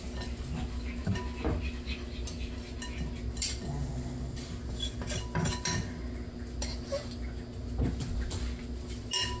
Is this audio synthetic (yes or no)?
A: no